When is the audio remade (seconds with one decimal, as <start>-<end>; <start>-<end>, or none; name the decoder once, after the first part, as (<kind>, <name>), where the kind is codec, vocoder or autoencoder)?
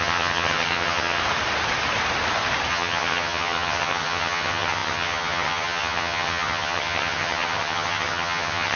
0.0-1.2 (vocoder, HiFi-GAN); 2.7-8.8